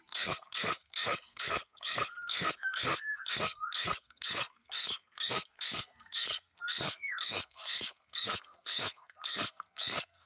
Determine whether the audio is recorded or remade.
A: remade